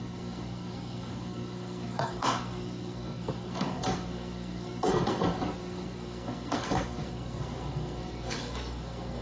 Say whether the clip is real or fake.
fake